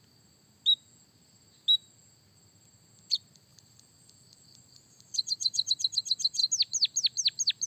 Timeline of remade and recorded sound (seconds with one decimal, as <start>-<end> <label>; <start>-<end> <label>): 0.0-3.5 recorded; 3.5-5.7 remade; 5.7-7.7 recorded